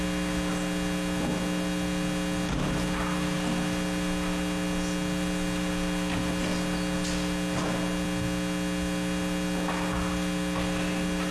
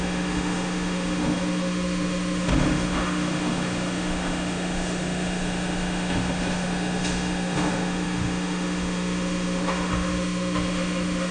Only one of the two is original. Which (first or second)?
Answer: first